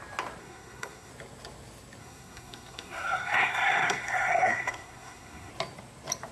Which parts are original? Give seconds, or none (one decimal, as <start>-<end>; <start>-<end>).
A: 0.0-0.4; 1.1-2.0; 5.5-6.3